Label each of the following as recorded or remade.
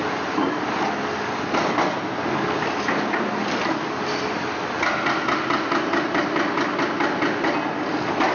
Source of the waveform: recorded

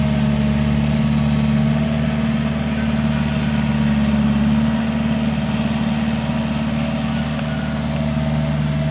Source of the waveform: recorded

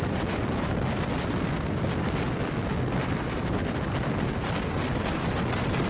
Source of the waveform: recorded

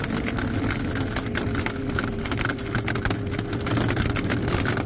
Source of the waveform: recorded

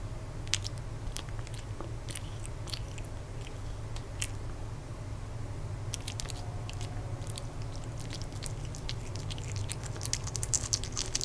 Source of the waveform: recorded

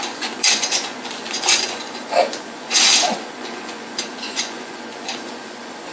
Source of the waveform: remade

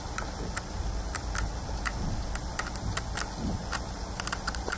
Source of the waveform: recorded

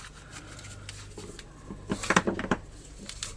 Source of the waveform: recorded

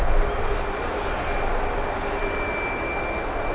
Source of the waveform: recorded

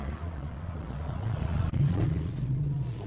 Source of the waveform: remade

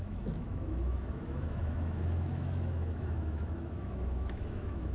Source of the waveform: remade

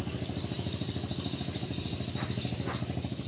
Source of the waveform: recorded